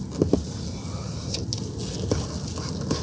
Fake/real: real